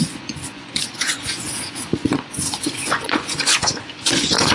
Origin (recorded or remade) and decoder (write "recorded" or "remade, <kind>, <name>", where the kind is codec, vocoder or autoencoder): remade, vocoder, Vocos